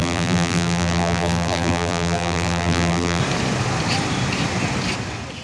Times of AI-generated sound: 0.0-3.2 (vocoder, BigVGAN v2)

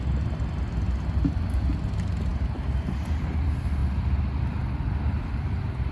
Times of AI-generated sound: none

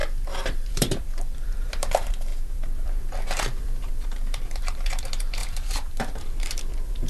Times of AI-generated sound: 0.0-7.1 (vocoder, BigVGAN v2)